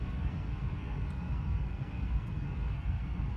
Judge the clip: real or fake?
fake